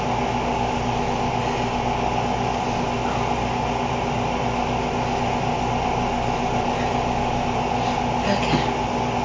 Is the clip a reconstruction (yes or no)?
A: no